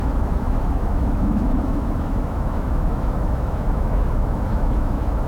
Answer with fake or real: fake